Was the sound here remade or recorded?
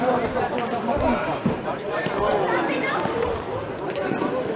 remade